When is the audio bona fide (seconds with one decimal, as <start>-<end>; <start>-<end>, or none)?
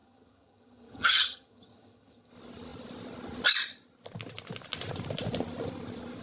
2.3-6.2